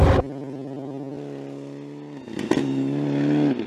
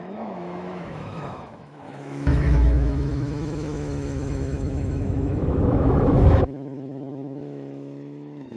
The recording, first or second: first